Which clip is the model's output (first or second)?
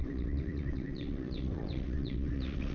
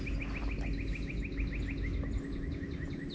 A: first